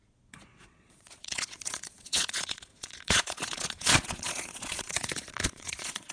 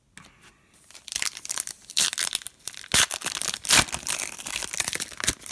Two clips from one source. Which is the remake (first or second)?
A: first